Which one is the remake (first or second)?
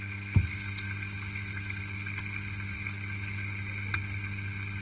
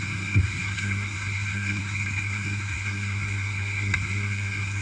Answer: second